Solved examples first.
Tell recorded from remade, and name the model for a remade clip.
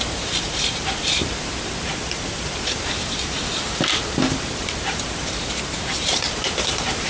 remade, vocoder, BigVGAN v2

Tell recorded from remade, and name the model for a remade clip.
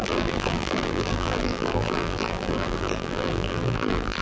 remade, vocoder, BigVGAN v2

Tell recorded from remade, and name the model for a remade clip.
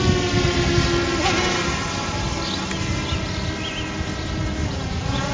recorded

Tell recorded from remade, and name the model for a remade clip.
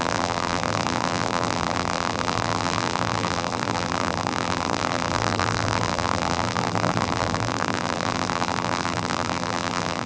remade, vocoder, BigVGAN v2